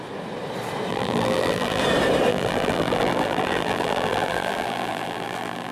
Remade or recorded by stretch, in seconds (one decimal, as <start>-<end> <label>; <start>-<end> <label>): 0.0-0.9 recorded; 0.9-1.8 remade; 1.8-2.3 recorded; 2.3-5.7 remade